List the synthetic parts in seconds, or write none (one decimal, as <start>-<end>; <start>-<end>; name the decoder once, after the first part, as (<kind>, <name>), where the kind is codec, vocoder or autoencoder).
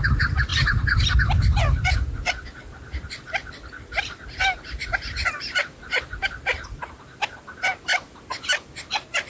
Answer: none